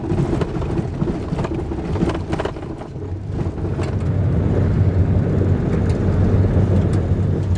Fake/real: real